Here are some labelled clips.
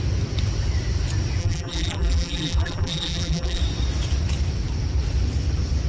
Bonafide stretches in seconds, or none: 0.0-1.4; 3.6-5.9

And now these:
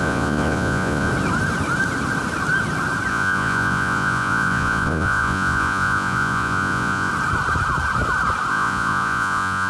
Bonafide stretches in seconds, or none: 1.1-3.1; 7.1-8.5

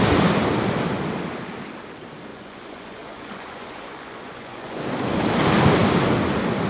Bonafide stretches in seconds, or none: 0.0-2.3; 4.8-6.7

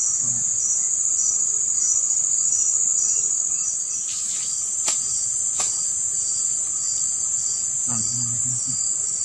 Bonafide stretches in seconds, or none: 2.9-7.9

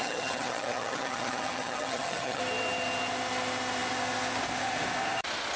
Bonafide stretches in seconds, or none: 2.4-5.6